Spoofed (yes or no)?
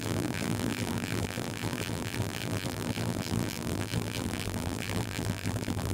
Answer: yes